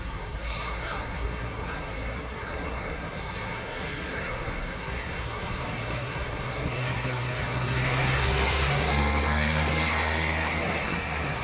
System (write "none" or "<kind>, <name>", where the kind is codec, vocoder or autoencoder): codec, SNAC